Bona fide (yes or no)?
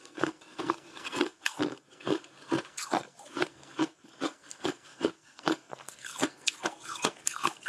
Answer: no